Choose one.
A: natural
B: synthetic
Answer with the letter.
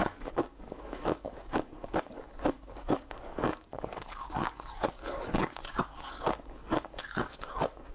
B